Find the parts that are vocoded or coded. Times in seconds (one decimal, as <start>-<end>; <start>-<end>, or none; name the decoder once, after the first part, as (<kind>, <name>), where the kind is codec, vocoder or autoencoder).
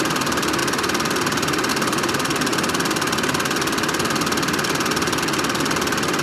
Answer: none